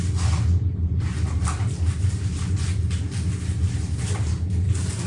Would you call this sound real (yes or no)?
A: yes